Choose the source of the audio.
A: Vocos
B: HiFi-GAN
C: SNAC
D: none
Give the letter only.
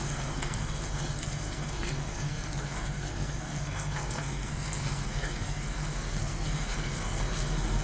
C